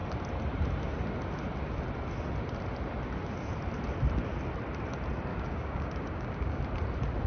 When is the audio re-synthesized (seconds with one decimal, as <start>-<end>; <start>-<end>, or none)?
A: 5.3-6.6